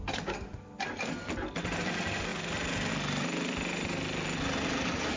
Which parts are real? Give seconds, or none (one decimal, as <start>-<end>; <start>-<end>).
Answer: 0.0-5.2